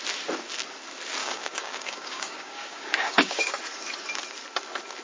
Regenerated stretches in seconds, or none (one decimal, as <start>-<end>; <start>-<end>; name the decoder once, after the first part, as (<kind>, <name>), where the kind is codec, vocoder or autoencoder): 1.2-3.6 (codec, DAC)